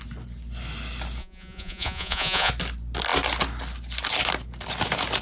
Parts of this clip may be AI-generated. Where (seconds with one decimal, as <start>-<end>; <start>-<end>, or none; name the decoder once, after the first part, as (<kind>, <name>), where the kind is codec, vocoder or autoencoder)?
1.2-2.5 (vocoder, Vocos)